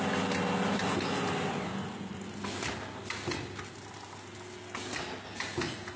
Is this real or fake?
real